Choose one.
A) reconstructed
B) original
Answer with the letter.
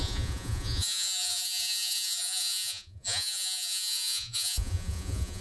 A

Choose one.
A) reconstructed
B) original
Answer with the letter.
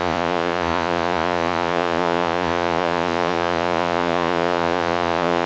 A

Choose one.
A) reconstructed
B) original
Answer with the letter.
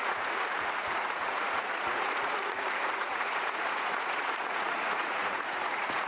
A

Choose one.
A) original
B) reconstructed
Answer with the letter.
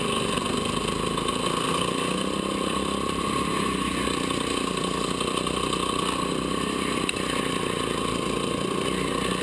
A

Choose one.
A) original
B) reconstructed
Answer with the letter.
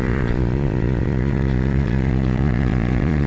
B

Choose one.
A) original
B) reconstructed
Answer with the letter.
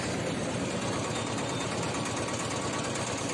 A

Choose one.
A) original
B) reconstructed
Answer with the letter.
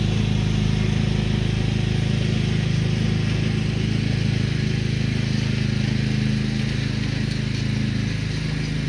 A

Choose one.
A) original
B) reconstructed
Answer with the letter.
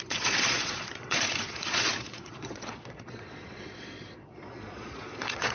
B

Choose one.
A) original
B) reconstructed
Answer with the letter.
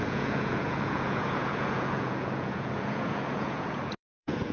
B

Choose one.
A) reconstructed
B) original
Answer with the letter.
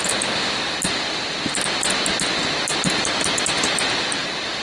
B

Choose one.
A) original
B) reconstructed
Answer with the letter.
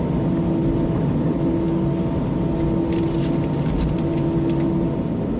A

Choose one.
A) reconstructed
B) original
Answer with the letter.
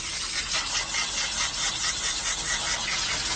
B